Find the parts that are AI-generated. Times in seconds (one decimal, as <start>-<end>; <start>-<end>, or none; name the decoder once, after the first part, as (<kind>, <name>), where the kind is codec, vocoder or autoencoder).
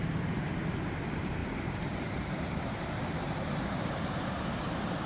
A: 0.0-0.6 (vocoder, BigVGAN v2); 1.4-4.5